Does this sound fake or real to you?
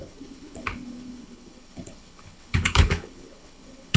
fake